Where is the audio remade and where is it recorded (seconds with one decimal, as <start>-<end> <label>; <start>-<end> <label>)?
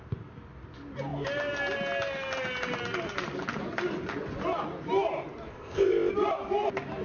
0.0-5.5 recorded; 5.5-6.1 remade; 6.1-7.0 recorded